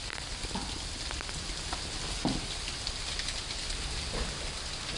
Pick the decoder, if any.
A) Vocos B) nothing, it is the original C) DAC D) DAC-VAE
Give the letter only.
B